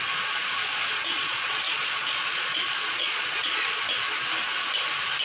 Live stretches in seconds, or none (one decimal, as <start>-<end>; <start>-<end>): 0.0-0.6; 3.7-5.2